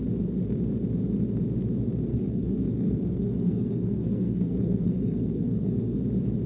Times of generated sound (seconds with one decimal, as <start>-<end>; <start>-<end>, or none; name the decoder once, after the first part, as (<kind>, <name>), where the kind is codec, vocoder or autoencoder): 2.1-6.0 (codec, SNAC)